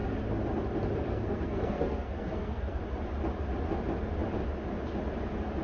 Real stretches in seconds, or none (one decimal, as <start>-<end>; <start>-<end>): 0.0-1.1; 2.8-5.6